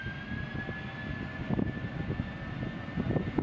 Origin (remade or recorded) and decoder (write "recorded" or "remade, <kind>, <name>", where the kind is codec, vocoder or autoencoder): recorded